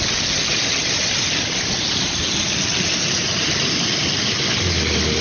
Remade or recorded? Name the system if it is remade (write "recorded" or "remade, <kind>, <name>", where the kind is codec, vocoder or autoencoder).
recorded